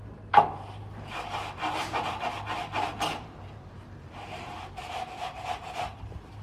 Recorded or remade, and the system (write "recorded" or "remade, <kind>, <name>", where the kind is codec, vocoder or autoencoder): remade, vocoder, BigVGAN v2